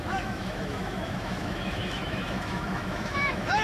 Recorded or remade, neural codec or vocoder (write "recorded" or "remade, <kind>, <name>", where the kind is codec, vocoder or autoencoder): remade, autoencoder, DAC-VAE